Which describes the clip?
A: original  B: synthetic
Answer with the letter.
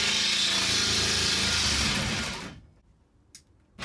A